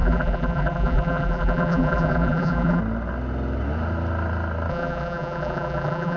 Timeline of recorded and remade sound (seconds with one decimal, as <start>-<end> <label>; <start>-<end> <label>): 0.0-2.8 remade; 2.8-4.7 recorded; 4.7-6.2 remade